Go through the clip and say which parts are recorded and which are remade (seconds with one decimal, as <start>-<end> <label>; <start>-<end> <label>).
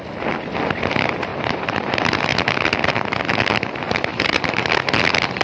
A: 0.0-1.3 recorded; 1.3-1.9 remade; 1.9-4.1 recorded; 4.1-4.7 remade; 4.7-5.4 recorded